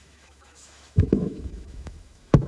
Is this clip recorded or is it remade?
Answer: remade